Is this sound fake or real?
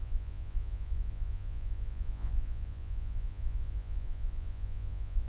fake